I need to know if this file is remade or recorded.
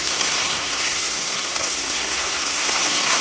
remade